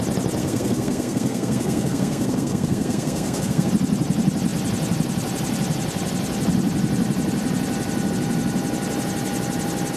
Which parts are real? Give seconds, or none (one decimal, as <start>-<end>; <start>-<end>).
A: 0.0-0.4; 3.7-10.0